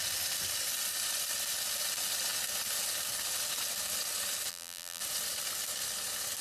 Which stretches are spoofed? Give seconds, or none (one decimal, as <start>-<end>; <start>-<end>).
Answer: 4.5-5.0